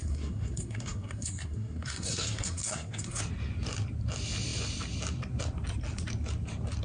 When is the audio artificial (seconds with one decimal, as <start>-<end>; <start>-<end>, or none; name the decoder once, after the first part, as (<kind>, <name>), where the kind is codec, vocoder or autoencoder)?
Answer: 0.0-3.2 (codec, SNAC)